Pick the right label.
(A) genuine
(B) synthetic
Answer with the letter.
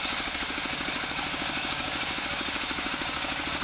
B